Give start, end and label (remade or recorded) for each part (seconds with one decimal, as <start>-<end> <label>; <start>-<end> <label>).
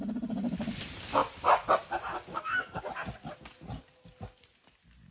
0.0-2.3 recorded; 2.3-2.8 remade; 2.8-5.1 recorded